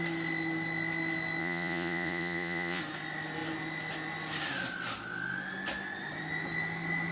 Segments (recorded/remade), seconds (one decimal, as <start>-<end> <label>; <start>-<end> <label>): 0.0-1.4 recorded; 1.4-2.8 remade; 2.8-7.1 recorded